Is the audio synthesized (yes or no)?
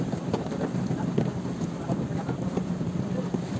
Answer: yes